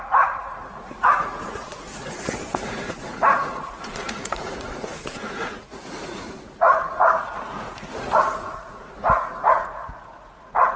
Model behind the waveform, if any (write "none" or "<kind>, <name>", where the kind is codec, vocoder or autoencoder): vocoder, Vocos